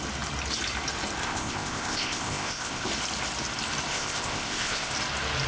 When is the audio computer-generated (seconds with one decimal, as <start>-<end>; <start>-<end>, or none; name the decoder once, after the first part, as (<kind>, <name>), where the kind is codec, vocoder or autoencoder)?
1.2-2.9 (codec, ZipCodec); 3.9-4.9